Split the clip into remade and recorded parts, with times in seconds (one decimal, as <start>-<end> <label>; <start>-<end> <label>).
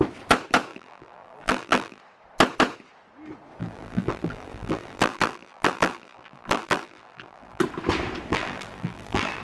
0.0-0.7 recorded; 0.7-2.0 remade; 2.0-3.6 recorded; 3.6-7.6 remade; 7.6-8.3 recorded; 8.3-9.4 remade